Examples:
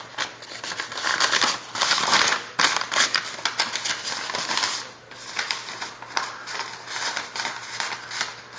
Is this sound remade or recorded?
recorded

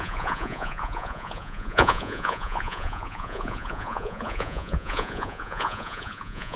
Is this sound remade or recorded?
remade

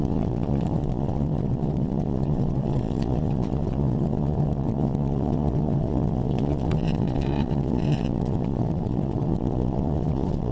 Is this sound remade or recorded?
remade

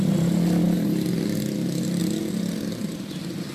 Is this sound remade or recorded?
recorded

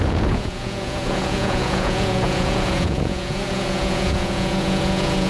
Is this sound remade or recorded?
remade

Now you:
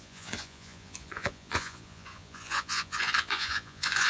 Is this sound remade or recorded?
remade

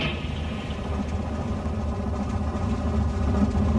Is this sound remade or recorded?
recorded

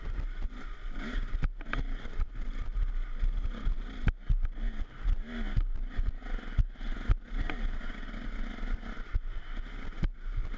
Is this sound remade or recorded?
recorded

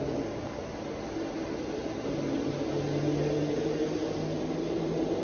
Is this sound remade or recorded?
recorded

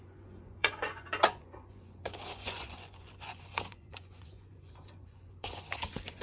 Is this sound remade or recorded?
remade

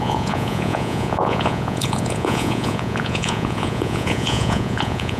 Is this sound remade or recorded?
remade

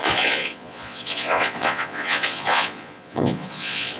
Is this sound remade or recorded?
remade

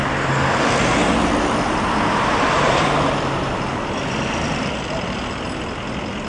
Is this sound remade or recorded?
recorded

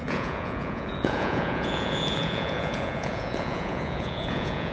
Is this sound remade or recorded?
remade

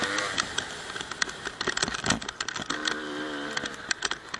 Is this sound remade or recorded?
recorded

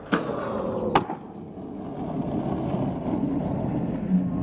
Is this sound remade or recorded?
recorded